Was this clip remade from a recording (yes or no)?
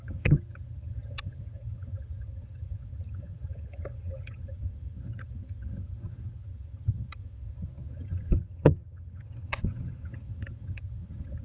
yes